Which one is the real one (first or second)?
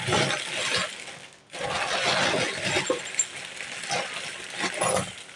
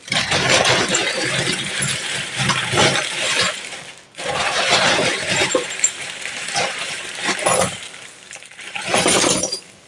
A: first